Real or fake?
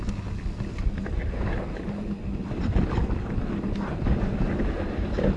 real